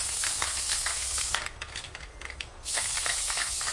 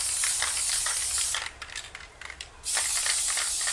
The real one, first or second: second